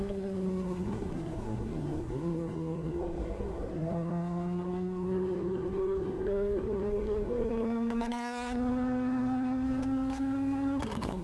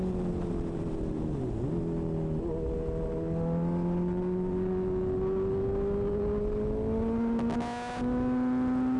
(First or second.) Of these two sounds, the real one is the second